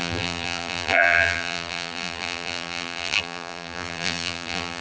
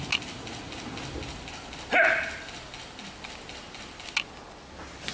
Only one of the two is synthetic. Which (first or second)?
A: first